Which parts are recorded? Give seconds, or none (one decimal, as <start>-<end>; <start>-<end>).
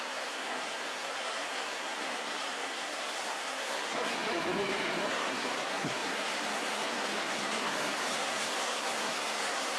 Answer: none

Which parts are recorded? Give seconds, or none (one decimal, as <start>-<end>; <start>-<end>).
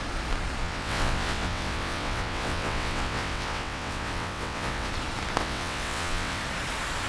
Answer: 0.0-0.6; 4.9-5.4; 6.4-7.1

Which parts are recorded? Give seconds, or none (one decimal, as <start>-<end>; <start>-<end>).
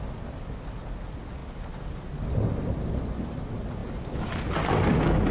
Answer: 0.0-5.3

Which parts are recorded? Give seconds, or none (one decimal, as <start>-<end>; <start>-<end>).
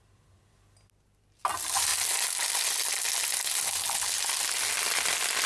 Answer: 0.0-5.5